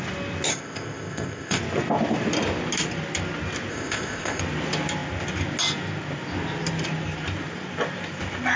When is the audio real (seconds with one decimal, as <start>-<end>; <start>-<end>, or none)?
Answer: 0.0-0.5; 1.6-3.7; 4.4-8.6